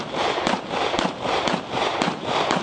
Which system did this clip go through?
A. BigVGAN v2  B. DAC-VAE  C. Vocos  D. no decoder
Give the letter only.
D